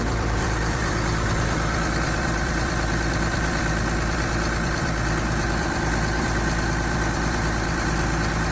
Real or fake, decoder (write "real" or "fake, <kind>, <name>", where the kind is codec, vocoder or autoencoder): fake, vocoder, BigVGAN v2